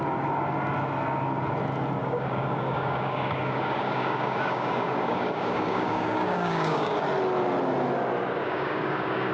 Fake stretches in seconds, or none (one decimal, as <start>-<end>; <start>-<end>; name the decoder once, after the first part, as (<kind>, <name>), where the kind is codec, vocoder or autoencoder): 2.0-7.0 (codec, DAC); 8.4-9.3